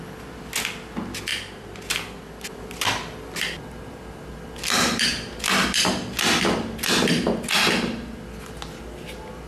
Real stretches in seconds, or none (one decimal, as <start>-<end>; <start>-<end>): 0.0-9.5